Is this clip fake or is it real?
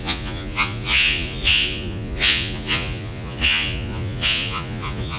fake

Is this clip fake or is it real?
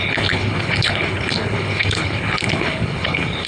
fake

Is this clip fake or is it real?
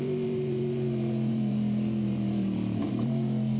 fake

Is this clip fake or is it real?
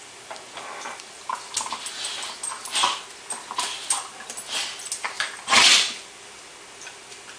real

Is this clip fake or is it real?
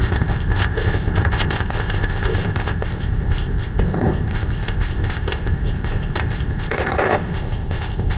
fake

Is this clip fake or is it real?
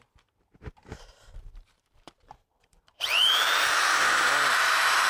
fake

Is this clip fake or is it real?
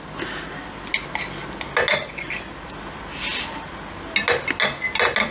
real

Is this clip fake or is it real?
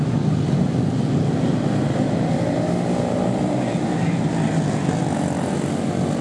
real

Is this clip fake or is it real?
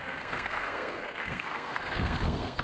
fake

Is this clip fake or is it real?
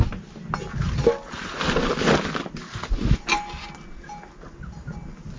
real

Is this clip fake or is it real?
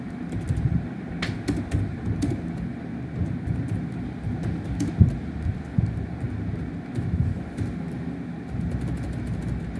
real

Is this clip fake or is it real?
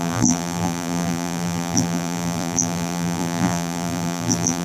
fake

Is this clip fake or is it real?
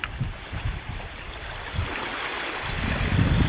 real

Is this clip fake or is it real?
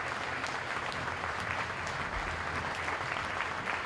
real